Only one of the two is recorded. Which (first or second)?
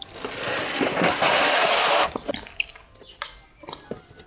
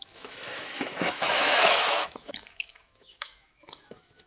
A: first